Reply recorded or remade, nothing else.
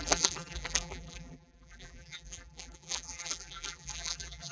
remade